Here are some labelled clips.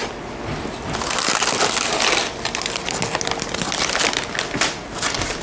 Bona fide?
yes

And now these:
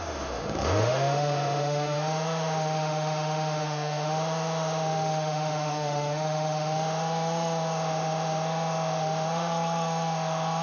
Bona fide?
no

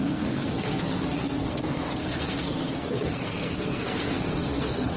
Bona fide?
no